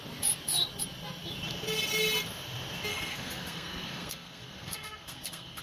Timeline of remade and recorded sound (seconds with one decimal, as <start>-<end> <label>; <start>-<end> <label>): 0.0-2.9 recorded; 2.9-5.6 remade